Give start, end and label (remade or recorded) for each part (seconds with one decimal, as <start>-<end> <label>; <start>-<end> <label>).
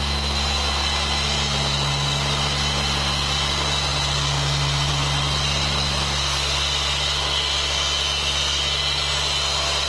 0.0-9.9 recorded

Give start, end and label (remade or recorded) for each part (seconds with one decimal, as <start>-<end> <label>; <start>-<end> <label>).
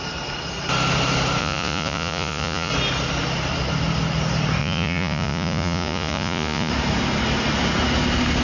0.0-1.4 recorded; 1.4-2.7 remade; 2.7-4.6 recorded; 4.6-6.7 remade; 6.7-8.4 recorded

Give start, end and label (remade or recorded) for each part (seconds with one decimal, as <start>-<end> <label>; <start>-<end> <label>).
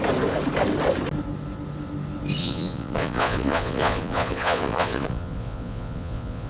0.0-2.4 recorded; 2.4-6.5 remade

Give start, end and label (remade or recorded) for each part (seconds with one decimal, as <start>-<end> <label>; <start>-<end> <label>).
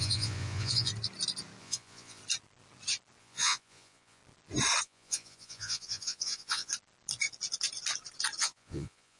0.0-0.9 remade; 0.9-1.6 recorded; 1.6-2.2 remade; 2.2-3.2 recorded; 3.2-4.2 remade; 4.2-4.8 recorded; 4.8-6.7 remade; 6.7-8.4 recorded; 8.4-9.2 remade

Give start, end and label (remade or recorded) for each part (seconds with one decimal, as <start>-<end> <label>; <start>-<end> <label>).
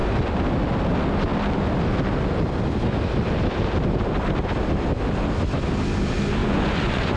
0.0-6.4 recorded; 6.4-7.2 remade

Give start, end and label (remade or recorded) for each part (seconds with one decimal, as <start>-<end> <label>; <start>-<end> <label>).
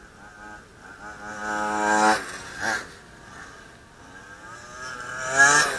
0.0-5.8 recorded